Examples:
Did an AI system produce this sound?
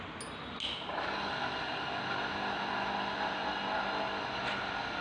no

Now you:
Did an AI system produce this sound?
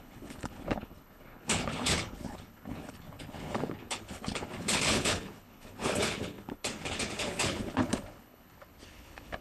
yes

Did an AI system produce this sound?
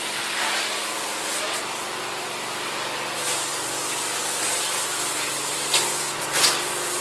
no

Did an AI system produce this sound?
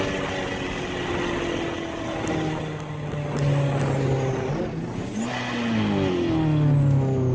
no